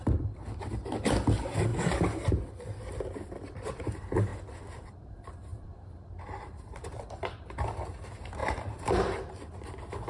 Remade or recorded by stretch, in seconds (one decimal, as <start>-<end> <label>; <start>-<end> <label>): 0.0-1.7 remade; 1.7-2.6 recorded; 2.6-10.1 remade